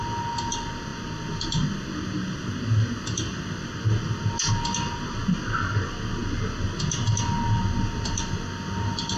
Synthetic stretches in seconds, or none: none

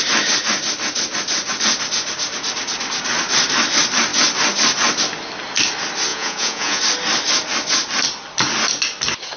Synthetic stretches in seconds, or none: 6.1-6.8 (vocoder, Vocos)

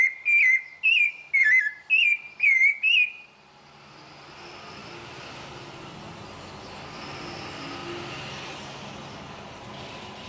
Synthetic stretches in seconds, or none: none

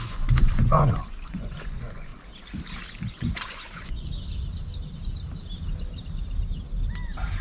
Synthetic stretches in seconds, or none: 0.0-2.1 (vocoder, Vocos); 3.1-4.1

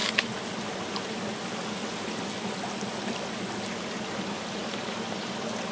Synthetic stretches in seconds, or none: none

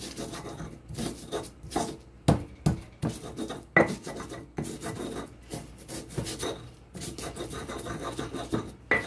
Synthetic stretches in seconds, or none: none

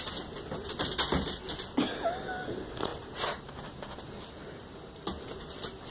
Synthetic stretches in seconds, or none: none

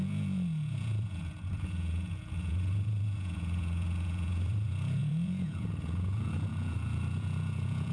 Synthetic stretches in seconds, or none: 0.0-7.9 (vocoder, Vocos)